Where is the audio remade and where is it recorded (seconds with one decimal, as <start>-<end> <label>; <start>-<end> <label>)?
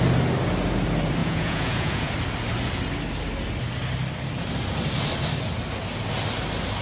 0.0-1.2 recorded; 1.2-2.1 remade; 2.1-6.8 recorded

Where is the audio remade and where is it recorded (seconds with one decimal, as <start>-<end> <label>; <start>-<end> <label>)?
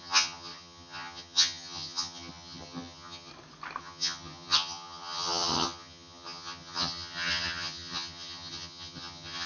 0.0-3.3 remade; 3.3-3.8 recorded; 3.8-9.5 remade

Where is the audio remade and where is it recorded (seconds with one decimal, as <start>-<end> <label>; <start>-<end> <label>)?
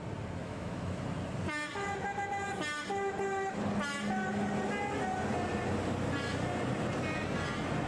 0.0-0.4 recorded; 0.4-1.0 remade; 1.0-7.9 recorded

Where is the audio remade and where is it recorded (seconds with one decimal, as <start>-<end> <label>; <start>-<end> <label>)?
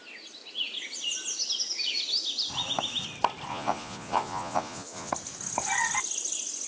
0.0-3.5 recorded; 3.5-5.1 remade; 5.1-6.7 recorded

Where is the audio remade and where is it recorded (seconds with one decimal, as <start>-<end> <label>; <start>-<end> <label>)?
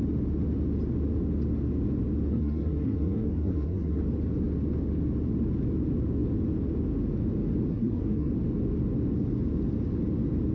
0.0-2.3 recorded; 2.3-4.0 remade; 4.0-7.7 recorded; 7.7-8.3 remade; 8.3-10.5 recorded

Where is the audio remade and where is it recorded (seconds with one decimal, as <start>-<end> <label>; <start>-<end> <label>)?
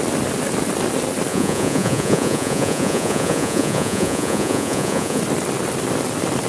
0.0-1.3 recorded; 1.3-5.2 remade; 5.2-6.5 recorded